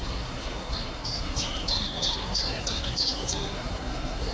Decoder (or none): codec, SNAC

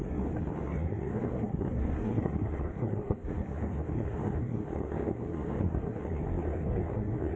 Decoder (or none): codec, SNAC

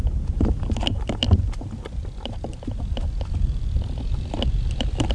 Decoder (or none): none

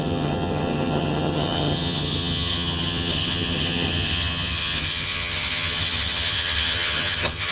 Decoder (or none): vocoder, HiFi-GAN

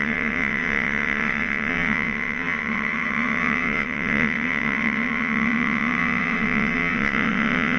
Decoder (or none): vocoder, WaveNeXt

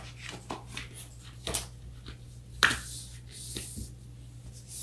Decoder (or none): none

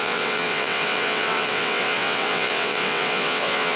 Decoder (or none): vocoder, WaveNeXt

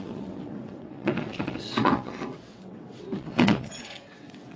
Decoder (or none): vocoder, WaveNeXt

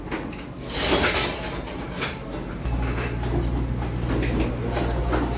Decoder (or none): none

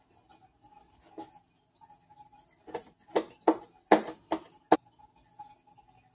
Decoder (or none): none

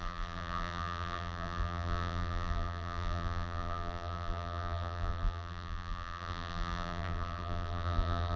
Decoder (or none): vocoder, BigVGAN v2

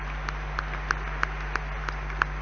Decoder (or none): none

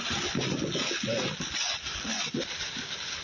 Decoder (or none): none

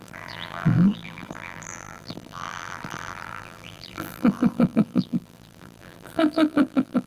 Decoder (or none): vocoder, BigVGAN v2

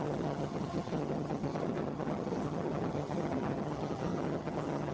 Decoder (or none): vocoder, HiFi-GAN